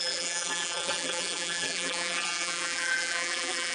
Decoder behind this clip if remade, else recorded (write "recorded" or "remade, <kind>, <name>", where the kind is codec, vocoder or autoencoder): remade, vocoder, BigVGAN v2